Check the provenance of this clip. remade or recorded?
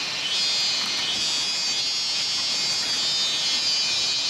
recorded